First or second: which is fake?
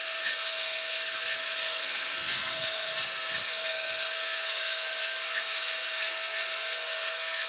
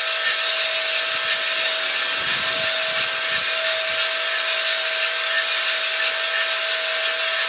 first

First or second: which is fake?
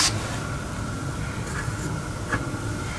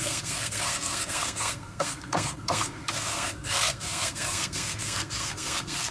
second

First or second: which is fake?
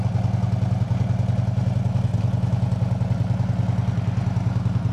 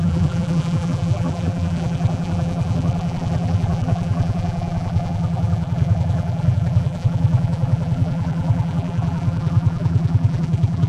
second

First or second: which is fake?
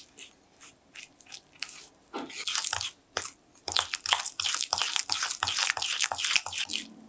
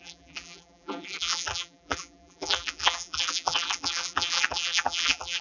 second